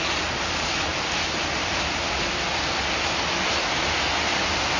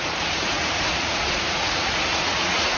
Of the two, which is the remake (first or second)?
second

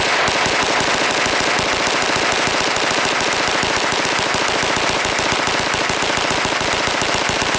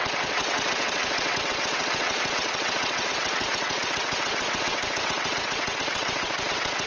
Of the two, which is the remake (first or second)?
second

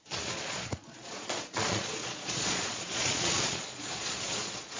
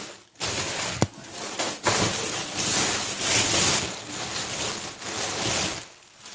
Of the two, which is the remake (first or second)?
first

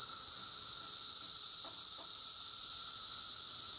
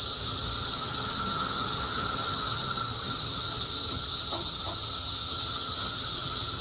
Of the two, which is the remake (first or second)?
second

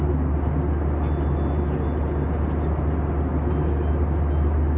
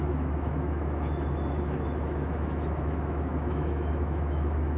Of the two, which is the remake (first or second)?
second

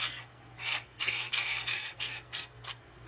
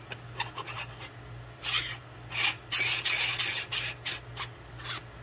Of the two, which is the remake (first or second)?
first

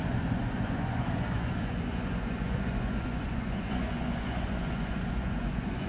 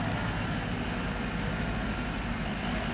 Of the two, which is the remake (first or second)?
first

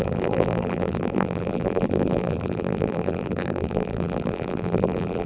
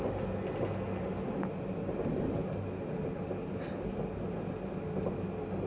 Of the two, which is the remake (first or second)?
first